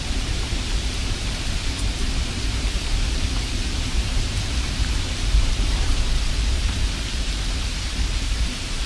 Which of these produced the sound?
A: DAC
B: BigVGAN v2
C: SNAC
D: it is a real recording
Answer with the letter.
B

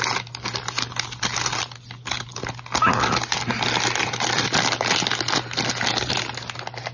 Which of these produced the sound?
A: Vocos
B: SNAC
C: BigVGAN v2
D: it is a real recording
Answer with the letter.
D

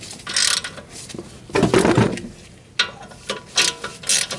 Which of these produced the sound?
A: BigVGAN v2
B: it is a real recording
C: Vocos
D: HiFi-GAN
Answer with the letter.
B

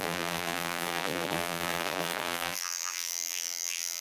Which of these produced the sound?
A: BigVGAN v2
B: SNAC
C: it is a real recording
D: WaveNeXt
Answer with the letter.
A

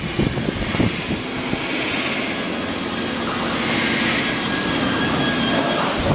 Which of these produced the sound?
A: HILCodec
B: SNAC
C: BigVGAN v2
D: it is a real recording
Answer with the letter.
D